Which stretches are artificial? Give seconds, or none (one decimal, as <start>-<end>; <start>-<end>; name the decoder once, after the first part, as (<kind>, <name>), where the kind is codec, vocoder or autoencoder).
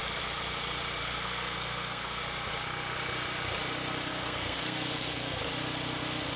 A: 1.0-2.2 (codec, SNAC); 4.1-5.4